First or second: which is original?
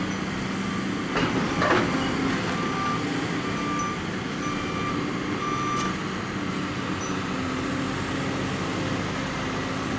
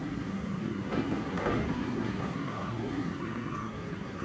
first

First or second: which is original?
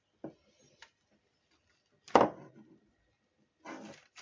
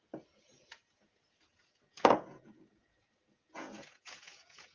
first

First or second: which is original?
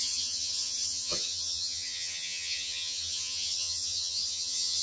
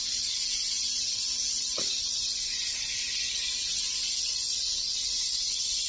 second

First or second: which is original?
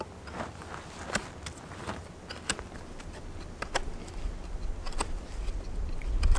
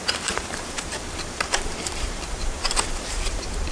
first